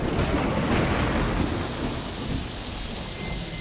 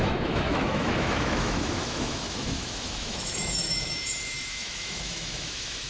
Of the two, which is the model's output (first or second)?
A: second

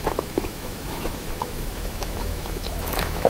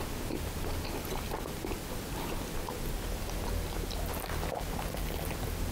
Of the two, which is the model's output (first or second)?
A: first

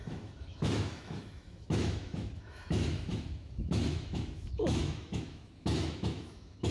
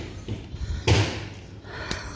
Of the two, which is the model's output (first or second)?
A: first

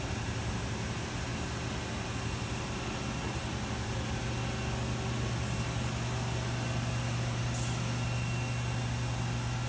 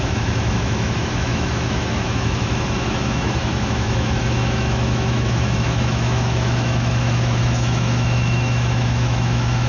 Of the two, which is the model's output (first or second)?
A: second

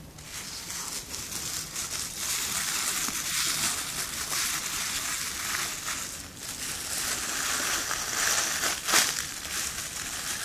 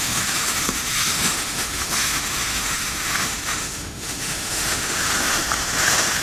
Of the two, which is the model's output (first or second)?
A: second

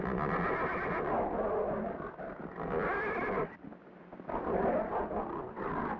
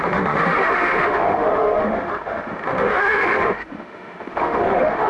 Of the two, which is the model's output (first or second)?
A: second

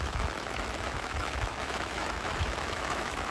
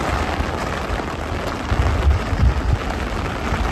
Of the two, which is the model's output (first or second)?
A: first